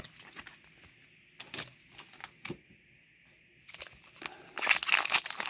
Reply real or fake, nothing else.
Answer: real